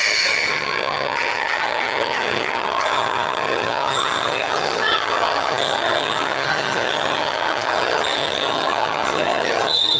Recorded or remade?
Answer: remade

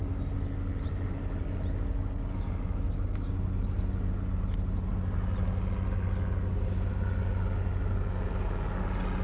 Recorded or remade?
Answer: recorded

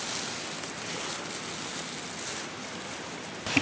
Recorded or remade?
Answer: recorded